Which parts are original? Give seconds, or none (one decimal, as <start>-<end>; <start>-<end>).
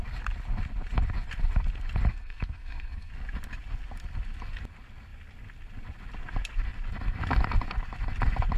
0.0-2.1; 3.1-8.6